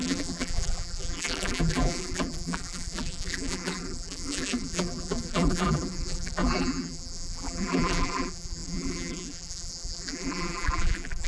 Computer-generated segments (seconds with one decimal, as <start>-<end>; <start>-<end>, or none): 0.0-11.3